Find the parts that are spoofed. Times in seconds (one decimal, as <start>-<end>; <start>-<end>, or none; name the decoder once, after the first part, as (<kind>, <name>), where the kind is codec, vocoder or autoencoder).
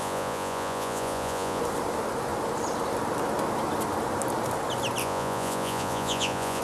0.0-1.6 (vocoder, Vocos); 5.0-6.6